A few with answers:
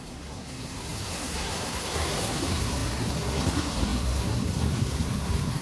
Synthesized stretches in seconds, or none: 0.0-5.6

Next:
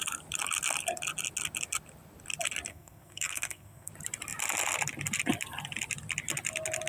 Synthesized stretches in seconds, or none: 2.7-3.9

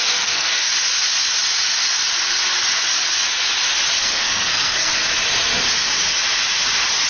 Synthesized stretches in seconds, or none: 0.0-0.7; 4.0-4.9

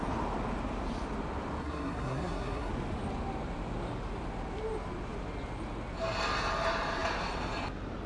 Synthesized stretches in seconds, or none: 1.6-2.7

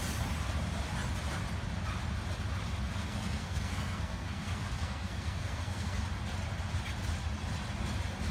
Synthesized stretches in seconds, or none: 3.0-6.0